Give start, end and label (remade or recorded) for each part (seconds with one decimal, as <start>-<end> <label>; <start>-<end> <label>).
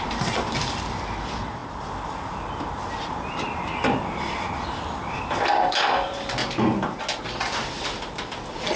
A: 0.0-6.4 remade; 6.4-7.8 recorded; 7.8-8.8 remade